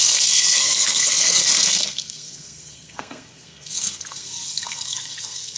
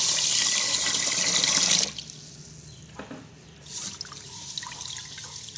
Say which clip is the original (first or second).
second